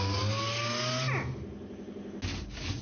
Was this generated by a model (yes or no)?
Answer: no